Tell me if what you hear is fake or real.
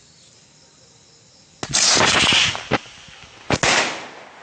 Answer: real